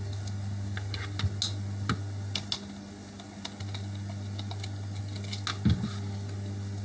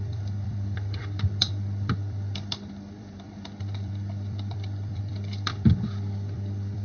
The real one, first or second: first